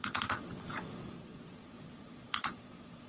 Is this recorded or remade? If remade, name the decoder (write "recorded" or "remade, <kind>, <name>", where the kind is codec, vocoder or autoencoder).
remade, vocoder, Vocos